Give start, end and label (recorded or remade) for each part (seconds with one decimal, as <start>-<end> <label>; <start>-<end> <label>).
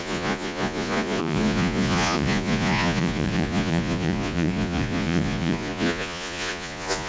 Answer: 0.0-7.1 remade